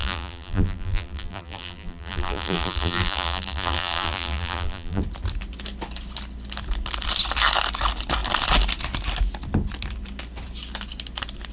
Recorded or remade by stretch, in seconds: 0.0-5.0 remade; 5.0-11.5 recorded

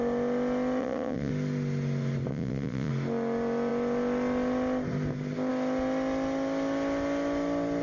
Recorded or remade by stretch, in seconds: 0.0-0.8 recorded; 0.8-1.3 remade; 1.3-2.3 recorded; 2.3-2.9 remade; 2.9-7.8 recorded

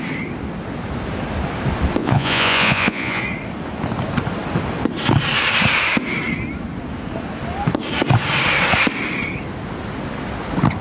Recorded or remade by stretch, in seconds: 0.0-2.0 recorded; 2.0-3.2 remade; 3.2-10.8 recorded

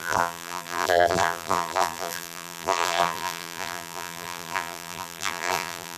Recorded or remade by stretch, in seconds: 0.0-6.0 remade

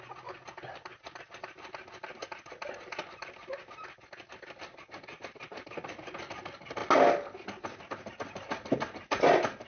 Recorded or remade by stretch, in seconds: 0.0-9.7 recorded

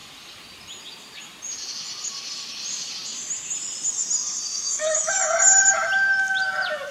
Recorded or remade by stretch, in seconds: 0.0-4.5 recorded; 4.5-5.1 remade; 5.1-6.9 recorded

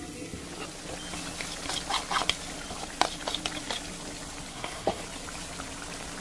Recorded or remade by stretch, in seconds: 0.0-4.5 recorded; 4.5-5.0 remade; 5.0-6.2 recorded